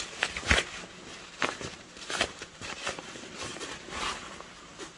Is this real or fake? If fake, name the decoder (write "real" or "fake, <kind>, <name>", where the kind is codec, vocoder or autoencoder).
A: real